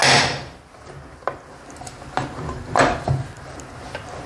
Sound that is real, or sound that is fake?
real